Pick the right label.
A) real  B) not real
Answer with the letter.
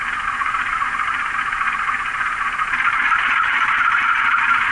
B